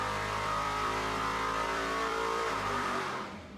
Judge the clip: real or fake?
fake